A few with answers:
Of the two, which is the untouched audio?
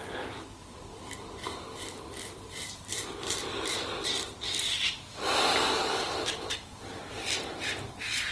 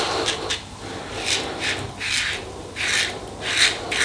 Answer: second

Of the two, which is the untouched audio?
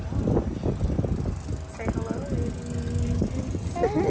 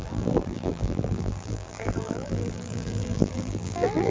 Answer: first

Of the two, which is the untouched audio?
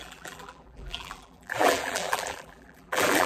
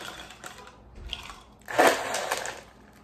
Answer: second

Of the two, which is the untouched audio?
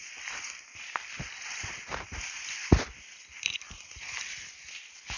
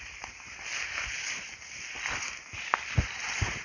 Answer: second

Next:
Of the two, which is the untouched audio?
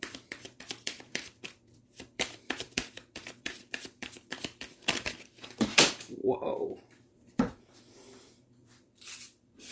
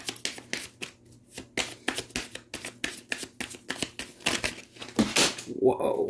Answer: second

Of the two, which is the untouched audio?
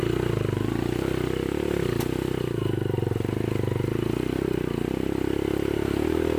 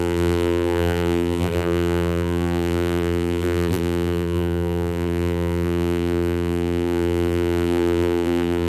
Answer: first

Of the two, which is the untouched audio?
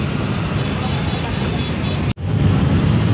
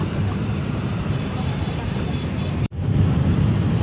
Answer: first